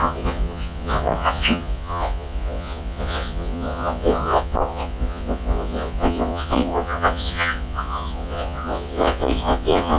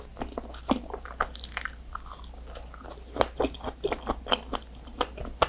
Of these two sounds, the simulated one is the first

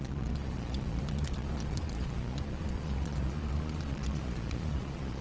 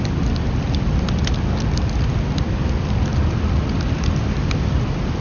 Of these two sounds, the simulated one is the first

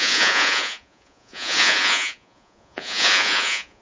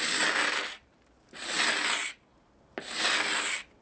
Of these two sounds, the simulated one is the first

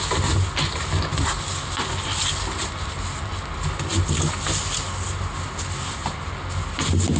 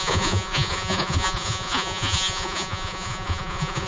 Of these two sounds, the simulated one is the second